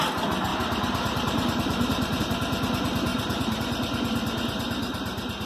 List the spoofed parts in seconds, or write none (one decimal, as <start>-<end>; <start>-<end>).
0.5-2.2; 3.1-3.6